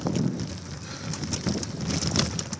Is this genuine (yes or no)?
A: yes